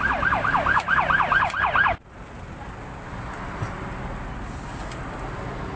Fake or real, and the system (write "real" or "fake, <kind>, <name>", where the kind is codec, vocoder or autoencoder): real